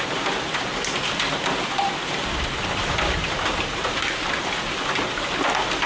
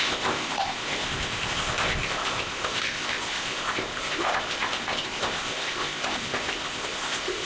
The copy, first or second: second